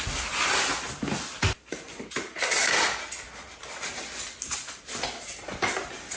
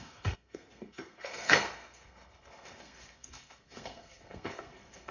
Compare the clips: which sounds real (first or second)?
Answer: first